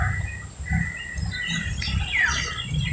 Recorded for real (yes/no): yes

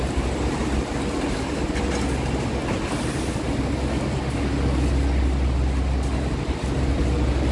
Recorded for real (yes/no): yes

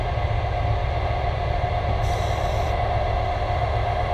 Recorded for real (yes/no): yes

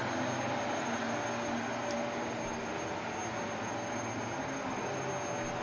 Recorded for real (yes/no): yes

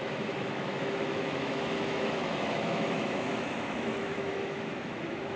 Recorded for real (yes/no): no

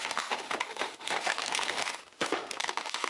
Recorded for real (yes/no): no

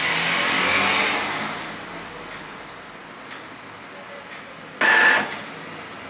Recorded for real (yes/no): yes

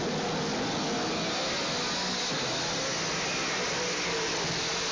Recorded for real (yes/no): yes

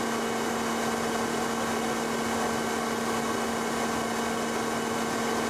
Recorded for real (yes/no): yes